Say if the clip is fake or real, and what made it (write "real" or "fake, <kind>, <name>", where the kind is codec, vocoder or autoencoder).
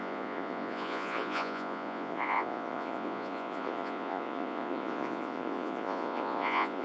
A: fake, vocoder, Vocos